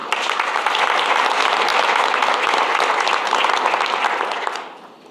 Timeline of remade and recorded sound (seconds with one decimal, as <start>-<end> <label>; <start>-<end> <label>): 0.0-0.8 remade; 0.8-1.7 recorded; 1.7-5.1 remade